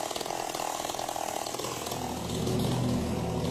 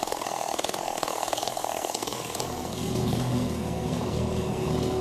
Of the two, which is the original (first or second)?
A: first